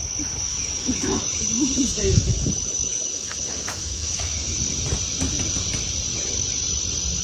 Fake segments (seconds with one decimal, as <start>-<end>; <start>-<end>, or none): 0.5-4.6; 6.1-6.8